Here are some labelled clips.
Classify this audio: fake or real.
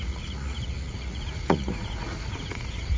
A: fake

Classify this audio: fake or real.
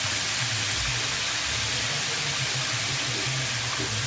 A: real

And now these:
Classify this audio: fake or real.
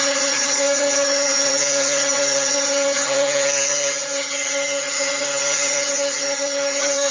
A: fake